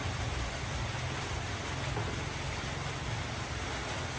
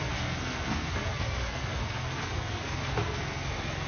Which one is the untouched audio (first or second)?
first